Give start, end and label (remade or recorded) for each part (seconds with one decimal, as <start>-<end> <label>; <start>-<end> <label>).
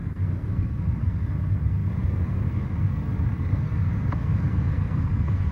0.0-5.5 remade